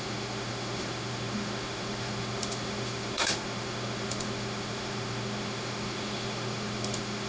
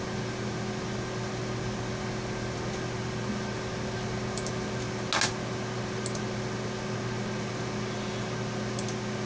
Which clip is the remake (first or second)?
first